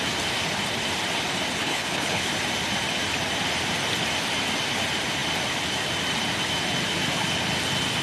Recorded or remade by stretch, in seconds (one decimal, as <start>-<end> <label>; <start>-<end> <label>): 0.0-1.6 recorded; 1.6-2.3 remade; 2.3-8.0 recorded